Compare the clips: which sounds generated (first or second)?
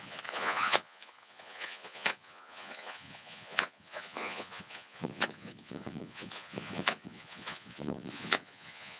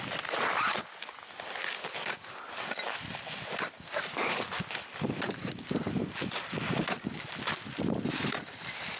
first